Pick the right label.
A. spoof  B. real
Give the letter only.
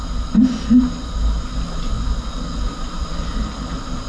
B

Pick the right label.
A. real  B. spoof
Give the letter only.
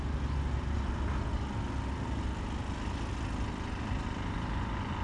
A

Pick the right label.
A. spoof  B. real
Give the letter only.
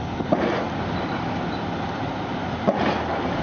B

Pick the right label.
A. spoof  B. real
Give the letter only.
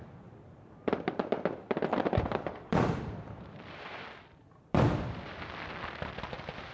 A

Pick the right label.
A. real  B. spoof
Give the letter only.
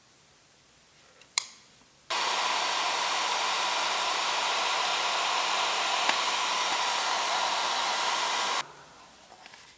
B